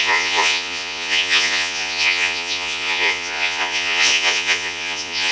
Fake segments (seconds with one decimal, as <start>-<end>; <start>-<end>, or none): 0.0-5.3

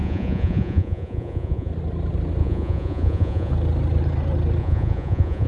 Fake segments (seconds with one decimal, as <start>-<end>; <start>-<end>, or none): 0.0-1.7; 2.4-3.5; 4.6-5.5